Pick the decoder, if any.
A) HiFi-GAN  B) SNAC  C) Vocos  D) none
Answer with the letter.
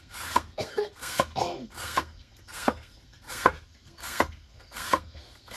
B